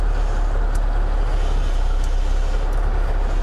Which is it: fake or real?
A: real